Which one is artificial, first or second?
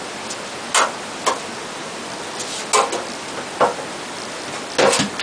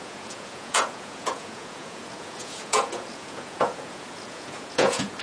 second